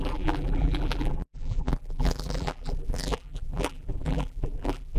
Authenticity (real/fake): fake